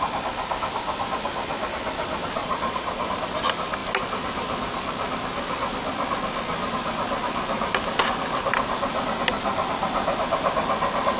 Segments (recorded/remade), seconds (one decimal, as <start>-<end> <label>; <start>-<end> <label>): 0.0-2.4 recorded; 2.4-3.1 remade; 3.1-11.2 recorded